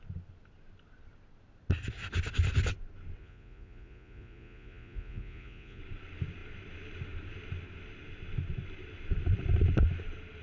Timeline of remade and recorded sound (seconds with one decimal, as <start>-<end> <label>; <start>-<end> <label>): 0.0-3.2 recorded; 3.2-5.8 remade; 5.8-10.4 recorded

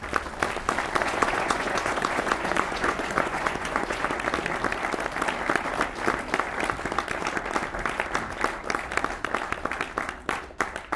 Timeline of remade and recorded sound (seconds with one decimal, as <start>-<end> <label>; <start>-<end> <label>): 0.0-1.0 recorded; 1.0-4.0 remade; 4.0-11.0 recorded

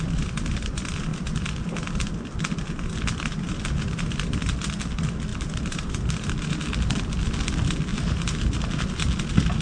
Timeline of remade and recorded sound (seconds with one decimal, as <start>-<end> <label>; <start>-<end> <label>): 0.0-5.3 recorded; 5.3-6.3 remade; 6.3-7.9 recorded; 7.9-8.5 remade; 8.5-9.6 recorded